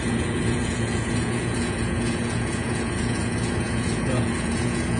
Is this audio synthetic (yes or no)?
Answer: yes